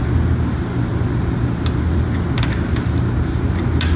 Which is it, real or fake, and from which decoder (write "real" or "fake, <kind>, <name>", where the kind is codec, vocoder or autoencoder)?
real